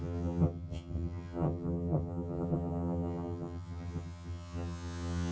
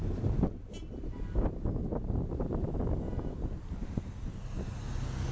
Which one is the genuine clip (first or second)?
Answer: second